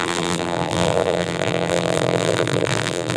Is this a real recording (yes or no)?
no